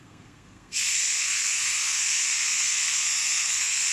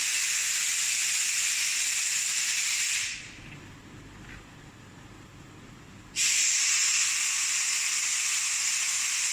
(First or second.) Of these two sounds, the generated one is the first